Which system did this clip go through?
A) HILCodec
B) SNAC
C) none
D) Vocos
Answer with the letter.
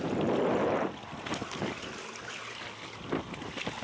C